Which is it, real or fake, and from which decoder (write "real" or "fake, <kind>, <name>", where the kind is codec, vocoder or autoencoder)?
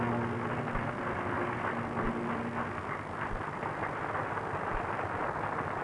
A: real